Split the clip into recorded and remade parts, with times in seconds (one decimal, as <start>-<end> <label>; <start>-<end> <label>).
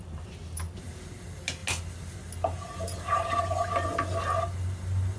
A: 0.0-5.2 recorded